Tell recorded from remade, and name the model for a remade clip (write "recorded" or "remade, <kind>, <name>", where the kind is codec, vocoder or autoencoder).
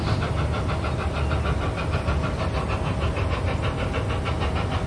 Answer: recorded